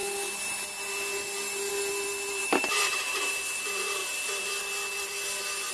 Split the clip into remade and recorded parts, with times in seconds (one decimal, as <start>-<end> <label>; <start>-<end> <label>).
0.0-2.4 recorded; 2.4-3.2 remade; 3.2-5.7 recorded